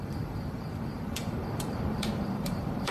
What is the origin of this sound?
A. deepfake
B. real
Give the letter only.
A